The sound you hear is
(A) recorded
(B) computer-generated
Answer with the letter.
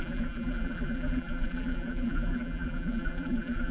B